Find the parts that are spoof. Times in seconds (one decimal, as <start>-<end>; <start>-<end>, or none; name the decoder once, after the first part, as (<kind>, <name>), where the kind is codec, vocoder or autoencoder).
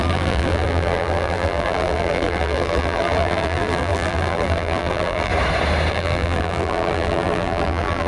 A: 0.0-5.3 (vocoder, BigVGAN v2); 5.9-8.1